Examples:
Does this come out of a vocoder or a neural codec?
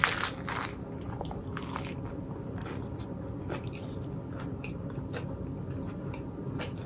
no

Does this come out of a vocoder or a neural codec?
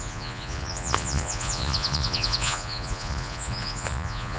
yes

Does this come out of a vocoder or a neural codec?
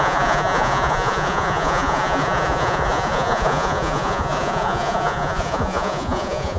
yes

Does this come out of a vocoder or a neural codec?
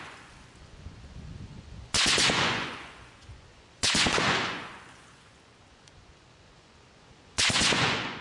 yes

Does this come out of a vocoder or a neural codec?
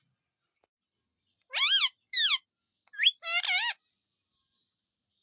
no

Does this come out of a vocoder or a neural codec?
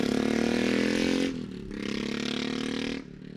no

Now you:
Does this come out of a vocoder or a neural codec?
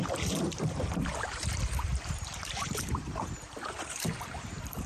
yes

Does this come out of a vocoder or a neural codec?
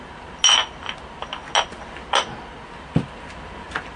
no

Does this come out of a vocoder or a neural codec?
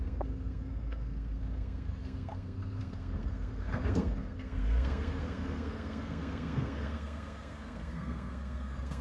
yes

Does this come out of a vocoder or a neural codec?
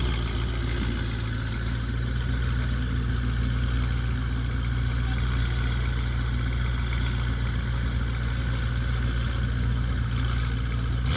no